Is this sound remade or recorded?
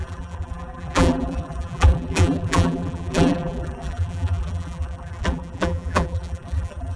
remade